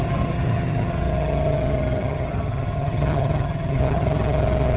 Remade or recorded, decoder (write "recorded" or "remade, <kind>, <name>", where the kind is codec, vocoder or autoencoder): remade, vocoder, HiFi-GAN